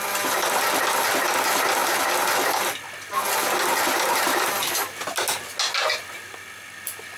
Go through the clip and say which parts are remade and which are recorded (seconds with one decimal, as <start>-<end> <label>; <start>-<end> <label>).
0.0-7.2 recorded

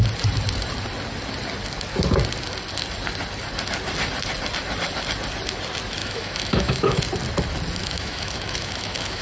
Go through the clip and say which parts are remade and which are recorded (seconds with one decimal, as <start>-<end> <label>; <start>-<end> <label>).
0.0-6.0 recorded; 6.0-7.0 remade; 7.0-7.8 recorded; 7.8-9.2 remade